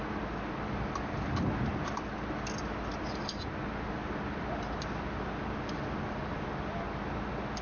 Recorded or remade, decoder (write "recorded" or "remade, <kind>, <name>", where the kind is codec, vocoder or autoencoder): recorded